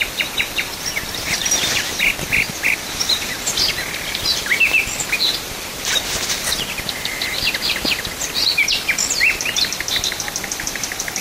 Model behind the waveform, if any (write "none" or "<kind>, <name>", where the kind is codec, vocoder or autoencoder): vocoder, BigVGAN v2